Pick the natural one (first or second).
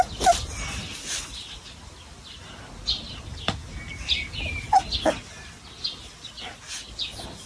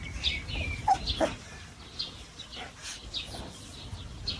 first